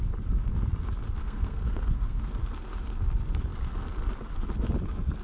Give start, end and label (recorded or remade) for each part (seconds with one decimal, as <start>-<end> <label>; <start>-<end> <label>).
0.0-1.2 recorded; 1.2-2.4 remade; 2.4-5.2 recorded